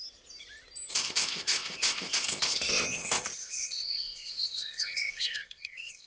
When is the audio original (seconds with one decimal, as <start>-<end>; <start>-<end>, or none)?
0.0-0.9